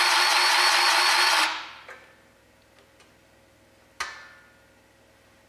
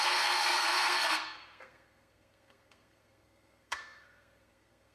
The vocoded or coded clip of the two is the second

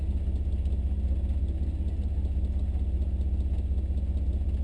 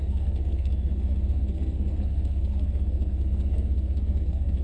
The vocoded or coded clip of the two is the second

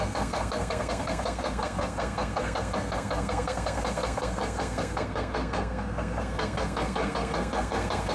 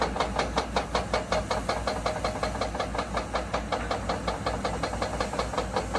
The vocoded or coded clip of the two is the first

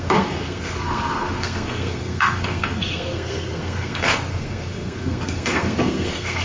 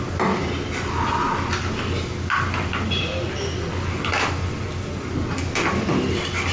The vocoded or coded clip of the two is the first